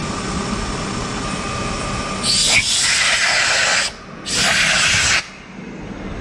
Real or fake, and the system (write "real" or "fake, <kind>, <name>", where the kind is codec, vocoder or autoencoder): real